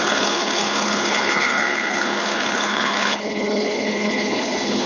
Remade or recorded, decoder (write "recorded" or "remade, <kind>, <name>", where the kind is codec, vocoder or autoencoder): remade, codec, HILCodec